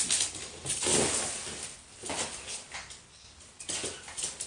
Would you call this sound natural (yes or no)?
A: yes